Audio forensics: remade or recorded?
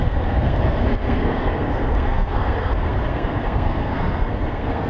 remade